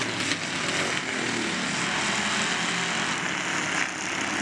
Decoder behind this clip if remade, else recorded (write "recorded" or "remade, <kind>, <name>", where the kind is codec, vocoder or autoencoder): recorded